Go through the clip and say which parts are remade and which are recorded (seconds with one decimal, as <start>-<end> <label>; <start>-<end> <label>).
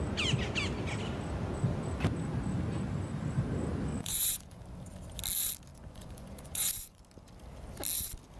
0.0-3.9 recorded; 3.9-4.6 remade; 4.6-5.7 recorded; 5.7-7.0 remade; 7.0-8.4 recorded